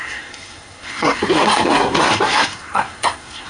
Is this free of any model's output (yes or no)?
no